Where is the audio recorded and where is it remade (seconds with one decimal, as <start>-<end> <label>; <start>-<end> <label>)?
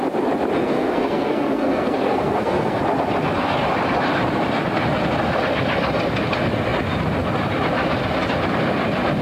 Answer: 0.0-0.6 recorded; 0.6-2.8 remade; 2.8-9.2 recorded